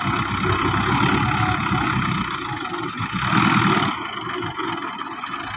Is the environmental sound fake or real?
real